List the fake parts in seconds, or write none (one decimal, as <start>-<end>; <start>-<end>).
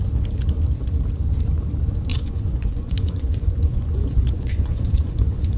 2.1-5.6